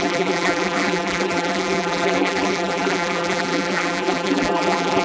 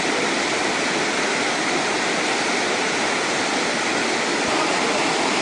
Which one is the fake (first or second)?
first